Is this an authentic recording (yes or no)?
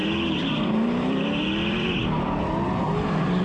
no